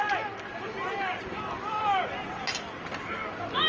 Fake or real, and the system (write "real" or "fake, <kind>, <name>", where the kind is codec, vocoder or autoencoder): real